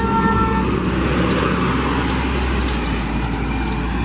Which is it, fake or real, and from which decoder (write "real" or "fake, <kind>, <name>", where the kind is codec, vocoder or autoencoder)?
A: real